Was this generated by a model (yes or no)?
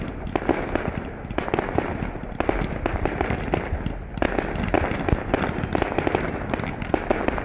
no